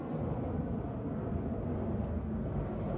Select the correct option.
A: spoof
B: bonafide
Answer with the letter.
B